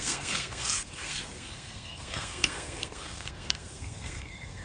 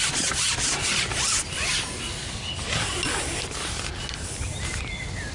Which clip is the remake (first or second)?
first